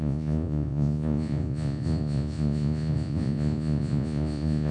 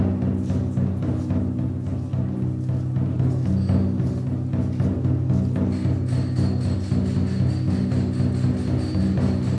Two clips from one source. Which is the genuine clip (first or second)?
second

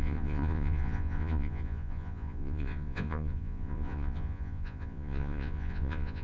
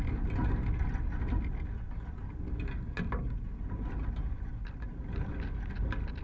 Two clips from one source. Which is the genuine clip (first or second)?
second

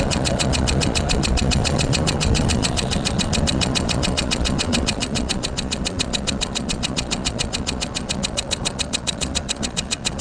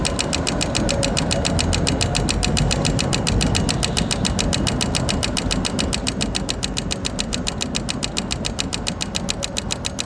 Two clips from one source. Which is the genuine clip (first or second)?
second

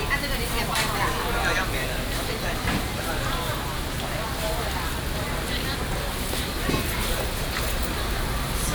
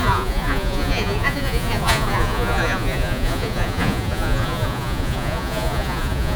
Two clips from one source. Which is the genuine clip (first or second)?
first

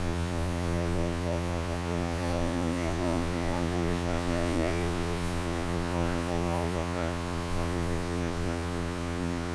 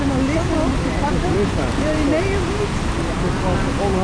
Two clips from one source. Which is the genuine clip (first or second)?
second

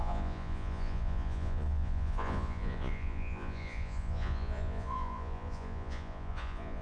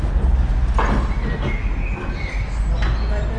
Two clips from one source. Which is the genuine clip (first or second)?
second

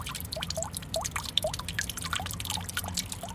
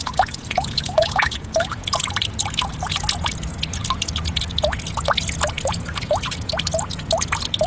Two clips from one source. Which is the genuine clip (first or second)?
first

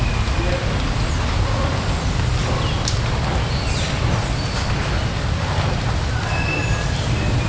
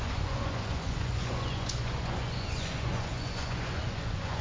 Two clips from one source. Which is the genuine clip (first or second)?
first